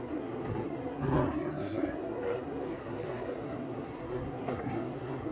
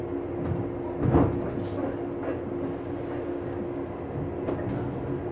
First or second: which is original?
second